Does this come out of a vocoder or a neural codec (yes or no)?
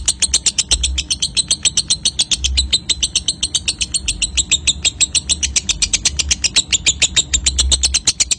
no